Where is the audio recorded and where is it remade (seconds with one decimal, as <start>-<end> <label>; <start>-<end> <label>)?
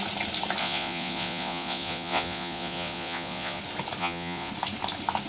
0.0-0.6 recorded; 0.6-3.6 remade; 3.6-4.0 recorded; 4.0-4.5 remade; 4.5-5.3 recorded